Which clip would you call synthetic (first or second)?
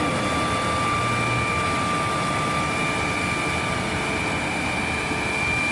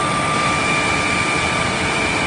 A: second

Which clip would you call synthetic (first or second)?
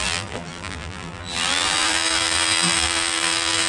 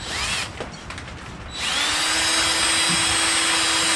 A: first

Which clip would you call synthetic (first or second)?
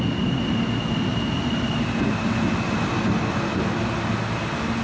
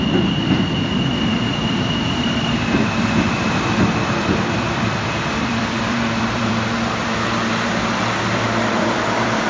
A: second